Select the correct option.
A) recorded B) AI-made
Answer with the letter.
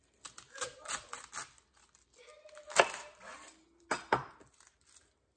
A